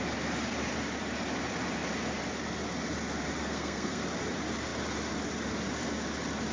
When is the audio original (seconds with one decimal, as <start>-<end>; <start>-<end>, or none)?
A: 0.0-3.4; 4.0-6.5